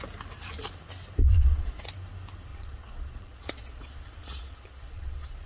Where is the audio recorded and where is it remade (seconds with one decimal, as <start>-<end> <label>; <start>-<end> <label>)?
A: 0.0-1.2 recorded; 1.2-1.8 remade; 1.8-2.5 recorded; 2.5-5.5 remade